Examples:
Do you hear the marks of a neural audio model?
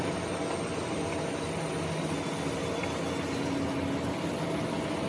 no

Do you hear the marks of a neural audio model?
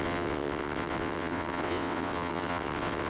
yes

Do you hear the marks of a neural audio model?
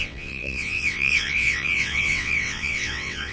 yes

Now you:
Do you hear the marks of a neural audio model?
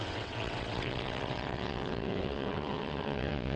yes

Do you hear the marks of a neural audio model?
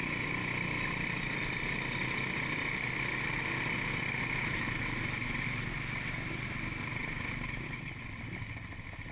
no